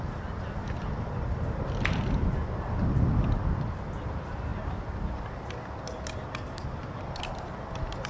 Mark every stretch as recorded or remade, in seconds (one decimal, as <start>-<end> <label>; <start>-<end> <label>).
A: 0.0-8.1 recorded